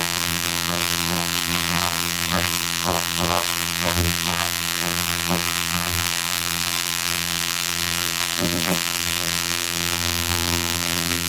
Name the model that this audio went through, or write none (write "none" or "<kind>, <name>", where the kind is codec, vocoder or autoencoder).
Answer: vocoder, BigVGAN v2